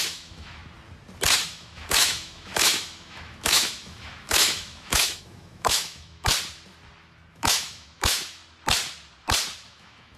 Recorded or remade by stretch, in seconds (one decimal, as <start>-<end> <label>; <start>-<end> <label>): 0.0-0.6 remade; 0.6-1.4 recorded; 1.4-6.3 remade; 6.3-7.3 recorded; 7.3-8.4 remade; 8.4-9.7 recorded; 9.7-10.2 remade